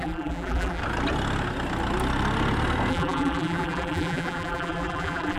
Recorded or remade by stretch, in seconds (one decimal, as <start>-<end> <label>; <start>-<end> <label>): 0.0-0.8 remade; 0.8-2.9 recorded; 2.9-5.4 remade